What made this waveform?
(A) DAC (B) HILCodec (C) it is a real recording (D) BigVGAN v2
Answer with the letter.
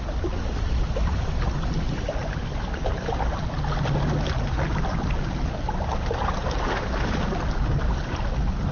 C